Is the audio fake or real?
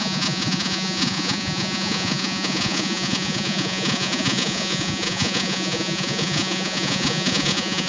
fake